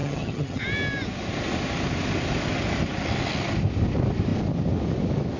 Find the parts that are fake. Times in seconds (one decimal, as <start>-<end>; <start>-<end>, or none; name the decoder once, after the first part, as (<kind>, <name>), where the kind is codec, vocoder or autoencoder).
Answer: 0.0-0.6 (vocoder, HiFi-GAN)